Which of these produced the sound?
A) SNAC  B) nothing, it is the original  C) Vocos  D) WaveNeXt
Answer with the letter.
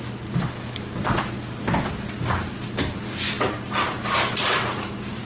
B